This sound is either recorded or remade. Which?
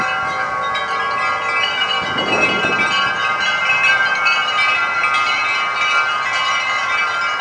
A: recorded